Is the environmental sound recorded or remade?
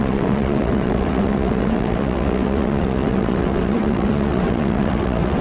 remade